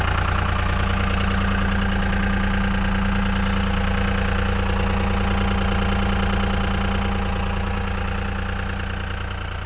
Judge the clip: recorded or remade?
recorded